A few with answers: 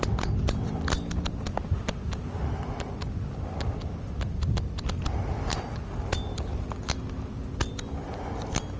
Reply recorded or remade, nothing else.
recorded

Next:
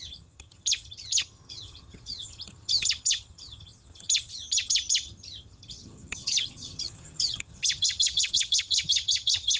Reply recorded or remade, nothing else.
remade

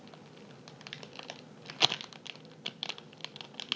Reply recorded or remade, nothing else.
recorded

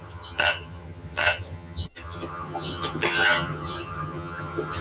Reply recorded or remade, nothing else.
remade